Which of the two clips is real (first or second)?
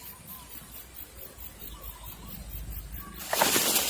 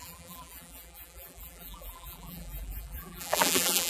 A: first